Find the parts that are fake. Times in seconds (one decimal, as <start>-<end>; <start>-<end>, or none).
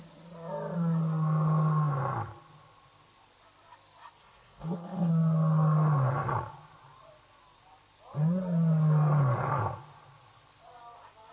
4.2-5.1